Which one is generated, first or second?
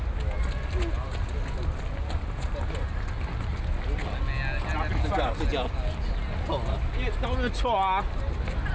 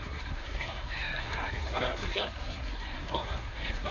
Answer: second